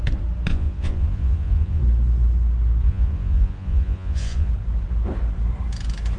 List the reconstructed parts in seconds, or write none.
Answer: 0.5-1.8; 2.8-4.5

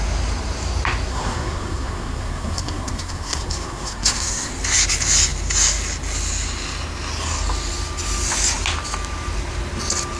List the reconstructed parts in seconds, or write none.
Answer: 1.1-4.5